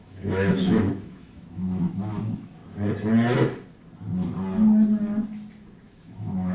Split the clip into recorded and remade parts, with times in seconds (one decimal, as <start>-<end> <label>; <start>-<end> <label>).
0.0-2.6 remade; 2.6-5.8 recorded; 5.8-6.5 remade